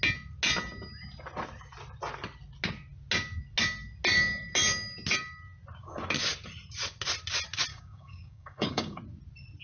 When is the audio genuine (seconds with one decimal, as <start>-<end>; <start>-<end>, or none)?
0.0-7.7; 9.0-9.6